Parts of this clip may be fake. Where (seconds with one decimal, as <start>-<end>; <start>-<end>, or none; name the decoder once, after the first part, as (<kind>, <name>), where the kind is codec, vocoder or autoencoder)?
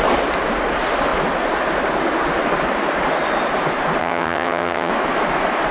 4.0-4.9 (vocoder, HiFi-GAN)